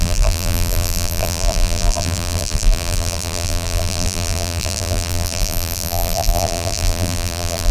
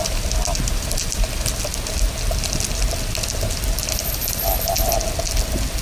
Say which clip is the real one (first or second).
second